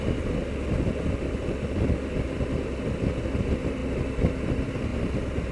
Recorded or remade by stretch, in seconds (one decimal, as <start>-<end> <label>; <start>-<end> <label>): 0.0-0.4 remade; 0.4-2.2 recorded; 2.2-3.8 remade; 3.8-4.4 recorded; 4.4-4.9 remade; 4.9-5.5 recorded